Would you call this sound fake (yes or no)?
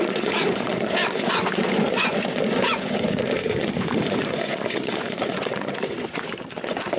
yes